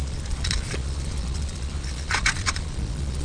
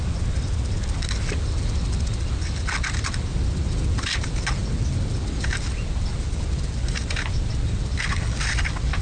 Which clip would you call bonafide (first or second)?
second